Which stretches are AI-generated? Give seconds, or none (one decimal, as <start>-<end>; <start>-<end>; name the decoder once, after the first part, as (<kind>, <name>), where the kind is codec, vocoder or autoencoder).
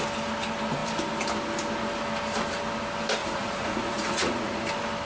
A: 3.2-4.6 (vocoder, Vocos)